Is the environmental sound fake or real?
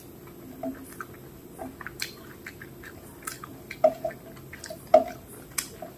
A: real